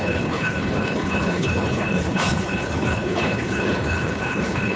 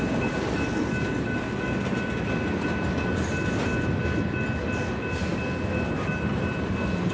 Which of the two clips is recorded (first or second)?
second